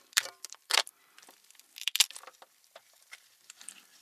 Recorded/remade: remade